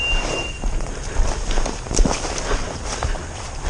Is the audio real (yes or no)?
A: yes